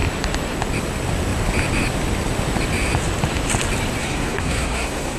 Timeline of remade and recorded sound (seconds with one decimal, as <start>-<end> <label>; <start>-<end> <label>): 0.0-4.0 recorded; 4.0-5.2 remade